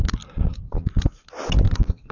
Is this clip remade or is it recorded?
recorded